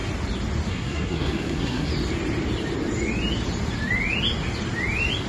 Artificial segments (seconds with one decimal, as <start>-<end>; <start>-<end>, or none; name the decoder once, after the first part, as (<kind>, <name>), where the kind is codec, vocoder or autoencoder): 0.7-1.9 (codec, SNAC)